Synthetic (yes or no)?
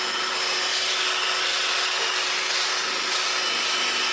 no